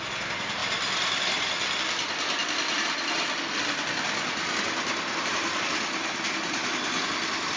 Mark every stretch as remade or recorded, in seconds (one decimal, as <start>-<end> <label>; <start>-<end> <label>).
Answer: 0.0-7.6 recorded